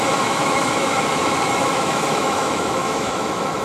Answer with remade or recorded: remade